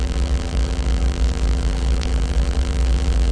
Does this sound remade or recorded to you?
remade